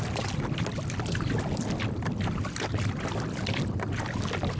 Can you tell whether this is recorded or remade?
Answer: recorded